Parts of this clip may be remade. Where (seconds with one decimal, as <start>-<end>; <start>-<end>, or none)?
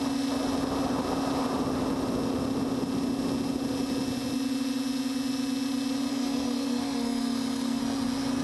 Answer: 6.1-7.8